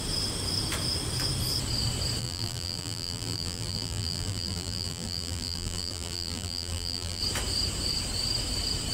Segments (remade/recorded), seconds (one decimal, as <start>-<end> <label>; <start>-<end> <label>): 0.0-2.2 recorded; 2.2-7.2 remade; 7.2-8.9 recorded

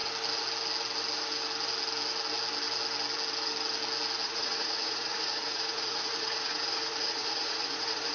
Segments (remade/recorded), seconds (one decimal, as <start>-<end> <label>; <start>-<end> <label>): 0.0-4.2 recorded; 4.2-8.1 remade

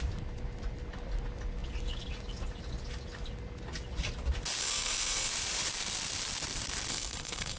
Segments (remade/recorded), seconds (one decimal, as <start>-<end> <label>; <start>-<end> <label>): 0.0-4.6 recorded; 4.6-5.3 remade; 5.3-6.9 recorded; 6.9-7.6 remade

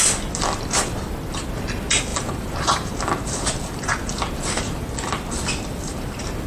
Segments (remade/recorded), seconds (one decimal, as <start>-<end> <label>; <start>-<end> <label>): 0.0-2.1 recorded; 2.1-3.8 remade; 3.8-6.5 recorded

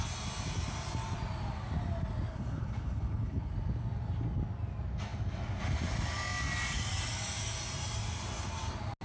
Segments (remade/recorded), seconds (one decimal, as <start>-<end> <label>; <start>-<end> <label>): 0.0-2.3 recorded; 2.3-3.5 remade; 3.5-9.0 recorded

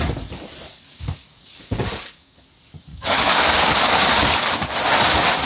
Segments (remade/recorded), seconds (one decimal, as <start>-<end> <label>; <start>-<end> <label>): 0.0-0.7 recorded; 0.7-2.5 remade; 2.5-2.9 recorded; 2.9-4.5 remade; 4.5-5.5 recorded